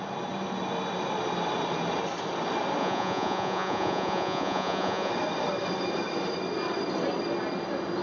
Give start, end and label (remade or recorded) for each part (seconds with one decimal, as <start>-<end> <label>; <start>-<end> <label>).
0.0-2.8 recorded; 2.8-5.1 remade; 5.1-8.0 recorded